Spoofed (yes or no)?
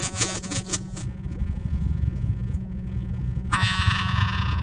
yes